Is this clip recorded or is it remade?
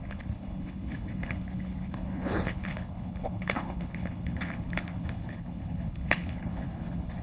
remade